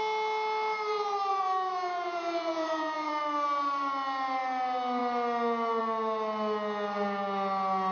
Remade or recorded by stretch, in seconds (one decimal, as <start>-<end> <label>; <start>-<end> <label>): 0.0-1.3 recorded; 1.3-3.1 remade; 3.1-7.9 recorded